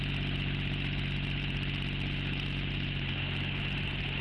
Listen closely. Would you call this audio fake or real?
real